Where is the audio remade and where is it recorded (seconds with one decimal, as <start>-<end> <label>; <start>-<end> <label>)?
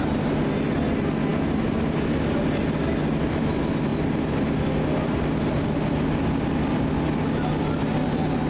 0.0-8.5 recorded